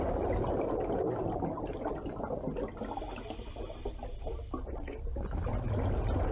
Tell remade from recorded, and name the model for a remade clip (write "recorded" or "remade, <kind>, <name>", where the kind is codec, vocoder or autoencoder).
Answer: recorded